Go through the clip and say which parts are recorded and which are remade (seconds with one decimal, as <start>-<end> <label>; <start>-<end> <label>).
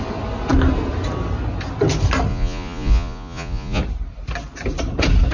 0.0-2.3 recorded; 2.3-3.8 remade; 3.8-5.3 recorded